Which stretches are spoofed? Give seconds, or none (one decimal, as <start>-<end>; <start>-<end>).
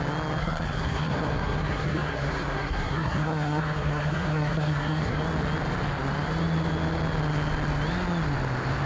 0.4-5.2